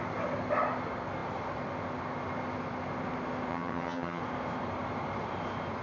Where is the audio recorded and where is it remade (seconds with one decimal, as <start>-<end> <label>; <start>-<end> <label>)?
0.0-3.5 recorded; 3.5-4.2 remade; 4.2-5.8 recorded